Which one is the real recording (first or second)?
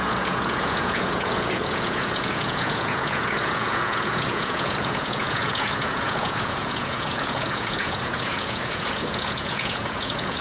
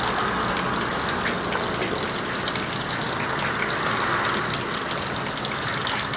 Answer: second